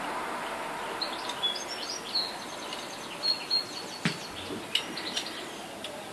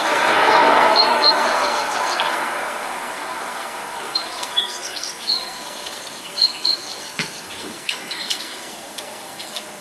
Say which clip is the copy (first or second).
second